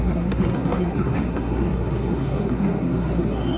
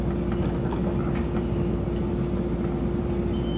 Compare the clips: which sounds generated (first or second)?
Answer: first